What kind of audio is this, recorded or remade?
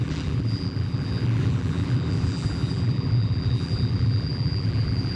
remade